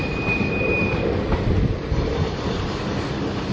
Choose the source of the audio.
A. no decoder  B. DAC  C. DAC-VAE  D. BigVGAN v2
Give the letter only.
A